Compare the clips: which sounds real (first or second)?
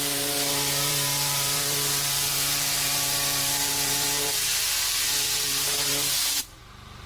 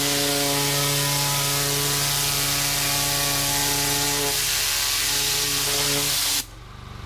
second